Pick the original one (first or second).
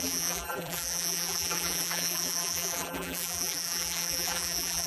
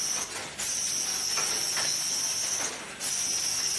second